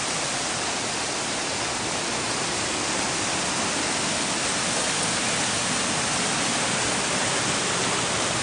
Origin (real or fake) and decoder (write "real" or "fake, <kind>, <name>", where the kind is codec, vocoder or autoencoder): real